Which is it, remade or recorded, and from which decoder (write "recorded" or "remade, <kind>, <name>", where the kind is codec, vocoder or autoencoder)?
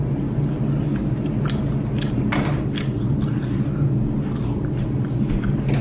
recorded